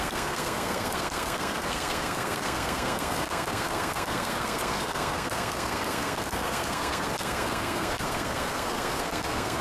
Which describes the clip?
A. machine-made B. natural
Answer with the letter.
A